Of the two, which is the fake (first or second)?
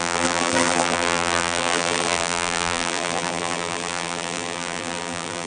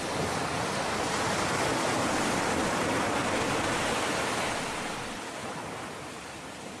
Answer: first